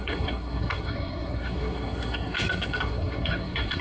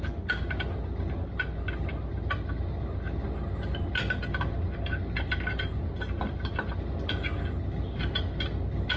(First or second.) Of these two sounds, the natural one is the second